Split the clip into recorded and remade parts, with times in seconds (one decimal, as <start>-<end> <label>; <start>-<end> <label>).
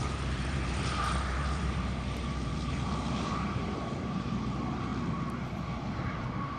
0.0-4.9 remade; 4.9-6.6 recorded